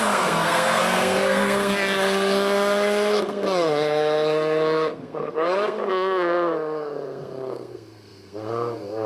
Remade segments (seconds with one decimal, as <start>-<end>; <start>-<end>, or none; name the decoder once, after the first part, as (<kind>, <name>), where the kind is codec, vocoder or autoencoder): 0.0-9.1 (codec, SNAC)